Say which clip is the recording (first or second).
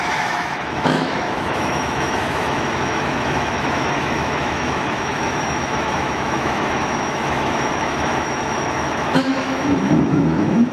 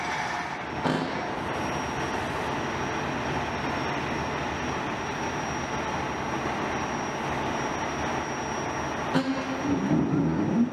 second